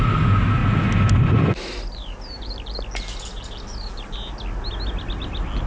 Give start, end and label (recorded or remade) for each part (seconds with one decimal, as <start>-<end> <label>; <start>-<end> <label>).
0.0-5.7 recorded